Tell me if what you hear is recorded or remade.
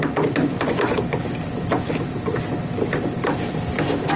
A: recorded